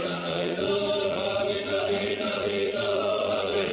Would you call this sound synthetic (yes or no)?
yes